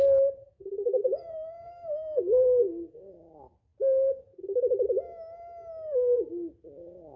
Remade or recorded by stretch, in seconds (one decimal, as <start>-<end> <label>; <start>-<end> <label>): 0.0-0.4 recorded; 0.4-3.1 remade; 3.1-7.2 recorded